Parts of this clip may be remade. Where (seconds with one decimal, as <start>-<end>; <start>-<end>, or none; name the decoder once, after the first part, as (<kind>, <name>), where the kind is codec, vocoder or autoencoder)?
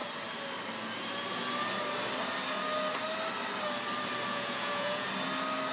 4.3-5.1 (vocoder, Vocos)